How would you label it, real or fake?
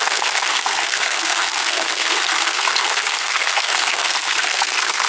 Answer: fake